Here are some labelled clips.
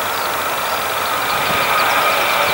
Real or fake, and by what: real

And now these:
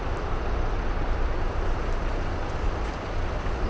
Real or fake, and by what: real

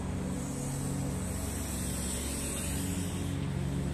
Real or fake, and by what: real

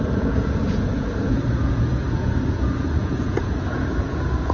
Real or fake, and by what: fake, vocoder, Vocos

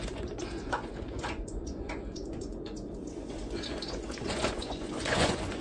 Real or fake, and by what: fake, vocoder, Vocos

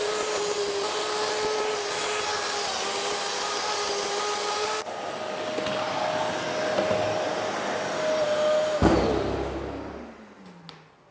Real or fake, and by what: real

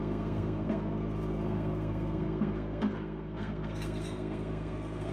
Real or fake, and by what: fake, codec, SNAC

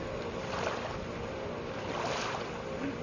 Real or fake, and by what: real